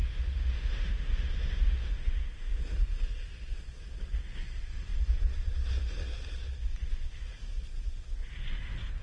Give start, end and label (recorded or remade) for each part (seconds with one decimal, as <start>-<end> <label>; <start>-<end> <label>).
0.0-2.6 remade; 2.6-9.0 recorded